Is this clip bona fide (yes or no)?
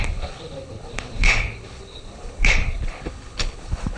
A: no